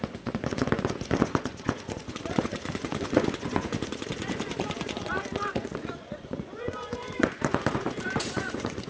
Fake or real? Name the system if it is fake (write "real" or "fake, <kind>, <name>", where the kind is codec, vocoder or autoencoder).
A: fake, vocoder, Vocos